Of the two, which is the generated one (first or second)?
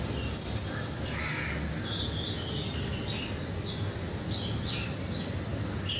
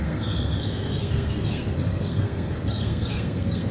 second